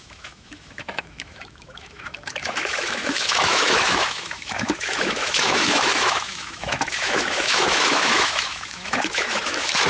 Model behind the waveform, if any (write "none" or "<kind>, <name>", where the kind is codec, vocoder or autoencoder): autoencoder, DAC-VAE